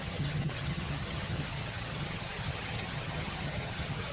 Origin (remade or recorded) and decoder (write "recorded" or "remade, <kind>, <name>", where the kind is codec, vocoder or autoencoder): remade, vocoder, HiFi-GAN